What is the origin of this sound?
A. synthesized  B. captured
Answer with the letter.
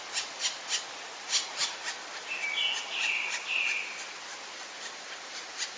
B